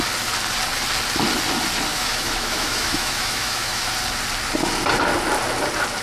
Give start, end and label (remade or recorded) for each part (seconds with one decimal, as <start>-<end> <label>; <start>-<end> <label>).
0.0-1.9 recorded; 1.9-3.8 remade; 3.8-6.0 recorded